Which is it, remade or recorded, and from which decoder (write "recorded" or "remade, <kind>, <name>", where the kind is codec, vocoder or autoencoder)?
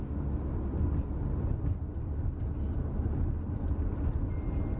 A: recorded